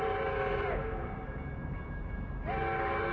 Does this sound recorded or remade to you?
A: recorded